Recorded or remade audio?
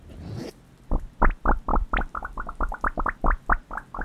recorded